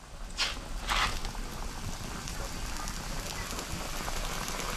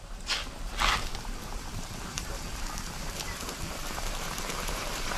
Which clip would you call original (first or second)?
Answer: first